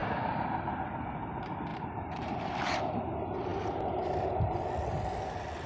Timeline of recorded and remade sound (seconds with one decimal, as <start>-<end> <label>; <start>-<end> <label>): 0.0-0.7 remade; 0.7-1.7 recorded; 1.7-2.8 remade; 2.8-5.7 recorded